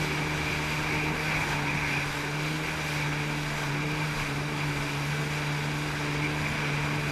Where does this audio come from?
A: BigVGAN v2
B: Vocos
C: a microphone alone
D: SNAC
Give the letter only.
C